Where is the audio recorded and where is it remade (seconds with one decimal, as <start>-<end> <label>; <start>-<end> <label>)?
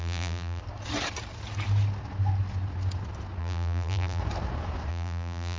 0.0-0.6 remade; 0.6-3.4 recorded; 3.4-4.2 remade; 4.2-4.9 recorded; 4.9-5.6 remade